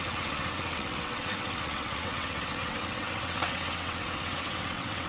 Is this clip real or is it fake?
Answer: fake